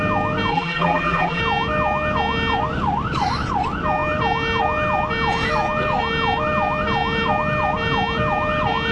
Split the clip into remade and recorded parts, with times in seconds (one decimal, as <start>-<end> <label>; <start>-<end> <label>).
0.0-0.5 recorded; 0.5-1.4 remade; 1.4-8.9 recorded